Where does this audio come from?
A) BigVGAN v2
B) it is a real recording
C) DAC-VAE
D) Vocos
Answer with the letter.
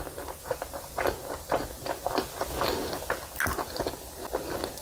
B